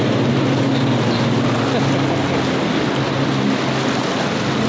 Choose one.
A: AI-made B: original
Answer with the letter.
B